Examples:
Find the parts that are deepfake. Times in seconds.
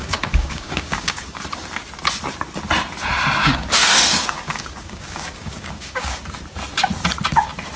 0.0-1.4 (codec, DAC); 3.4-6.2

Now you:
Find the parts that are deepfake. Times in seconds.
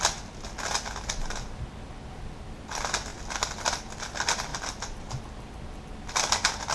4.5-5.2 (vocoder, BigVGAN v2)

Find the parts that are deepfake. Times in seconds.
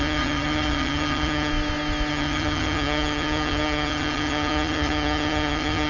0.0-1.5 (vocoder, HiFi-GAN); 2.1-5.9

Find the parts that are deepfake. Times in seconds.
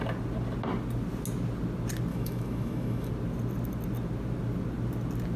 2.1-3.1 (autoencoder, DAC-VAE)